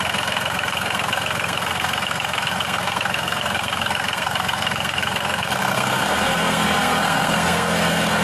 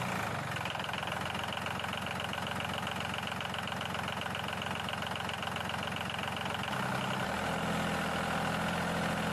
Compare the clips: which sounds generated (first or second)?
first